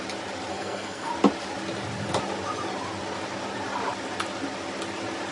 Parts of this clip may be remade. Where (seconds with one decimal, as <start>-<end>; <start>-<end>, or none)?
0.5-1.1